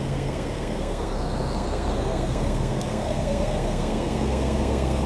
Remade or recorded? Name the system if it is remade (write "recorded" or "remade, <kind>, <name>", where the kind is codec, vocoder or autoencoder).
remade, codec, SNAC